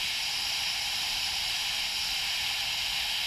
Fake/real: real